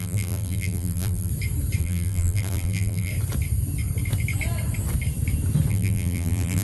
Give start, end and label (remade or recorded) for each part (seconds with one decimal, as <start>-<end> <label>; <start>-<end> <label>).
0.0-1.3 remade; 1.3-1.8 recorded; 1.8-3.1 remade; 3.1-5.7 recorded; 5.7-6.6 remade